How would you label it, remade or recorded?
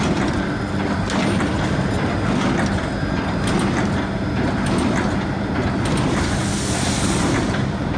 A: recorded